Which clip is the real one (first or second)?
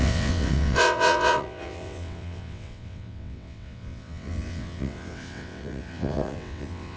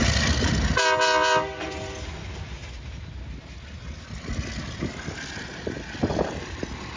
second